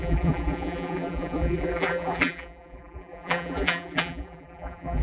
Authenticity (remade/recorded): remade